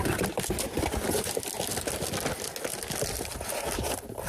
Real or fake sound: real